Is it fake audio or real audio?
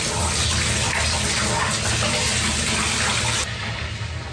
real